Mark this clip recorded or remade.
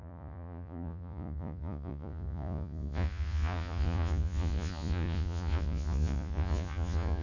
remade